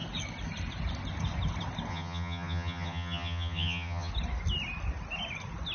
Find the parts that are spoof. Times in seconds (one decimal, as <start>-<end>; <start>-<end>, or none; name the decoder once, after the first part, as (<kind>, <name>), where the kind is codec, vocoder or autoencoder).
1.9-4.1 (vocoder, HiFi-GAN)